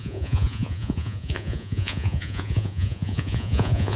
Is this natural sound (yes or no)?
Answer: no